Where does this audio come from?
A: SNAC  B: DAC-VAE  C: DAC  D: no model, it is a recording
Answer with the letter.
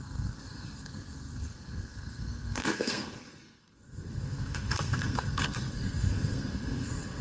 A